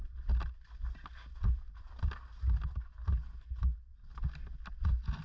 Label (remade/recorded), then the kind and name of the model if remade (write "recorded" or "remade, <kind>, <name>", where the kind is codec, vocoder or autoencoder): recorded